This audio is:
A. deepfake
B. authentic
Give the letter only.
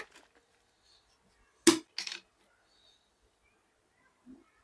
B